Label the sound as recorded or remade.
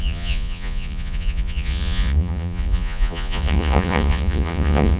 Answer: remade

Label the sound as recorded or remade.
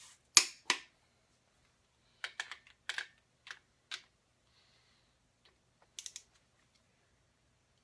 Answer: recorded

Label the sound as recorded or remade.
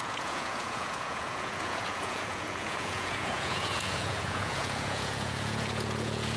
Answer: remade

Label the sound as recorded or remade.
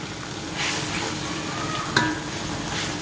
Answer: recorded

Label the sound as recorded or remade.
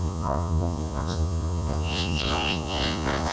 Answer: remade